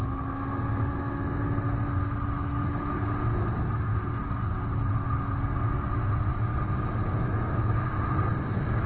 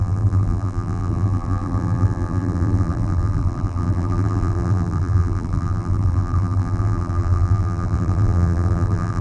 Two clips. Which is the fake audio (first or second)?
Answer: second